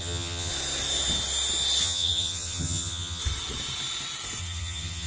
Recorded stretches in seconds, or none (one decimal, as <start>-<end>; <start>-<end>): 0.5-1.8; 3.2-4.4